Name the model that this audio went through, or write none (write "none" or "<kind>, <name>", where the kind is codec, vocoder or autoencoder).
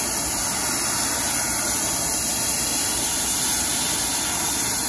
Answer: none